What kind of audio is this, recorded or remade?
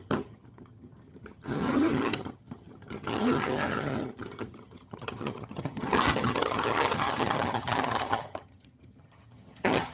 remade